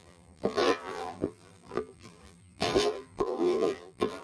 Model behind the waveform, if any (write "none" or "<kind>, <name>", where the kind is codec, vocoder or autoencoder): vocoder, BigVGAN v2